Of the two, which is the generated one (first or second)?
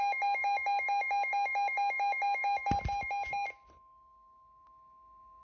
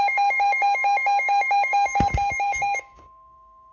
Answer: second